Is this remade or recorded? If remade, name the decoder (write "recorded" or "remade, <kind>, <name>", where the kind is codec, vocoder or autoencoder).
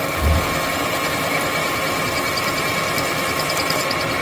recorded